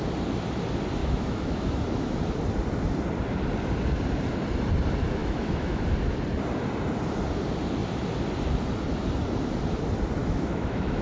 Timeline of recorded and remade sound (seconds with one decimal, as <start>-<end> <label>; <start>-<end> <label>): 0.0-1.0 recorded; 1.0-2.2 remade; 2.2-5.2 recorded; 5.2-5.8 remade; 5.8-10.2 recorded; 10.2-11.0 remade